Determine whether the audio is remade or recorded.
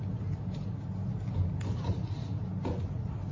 recorded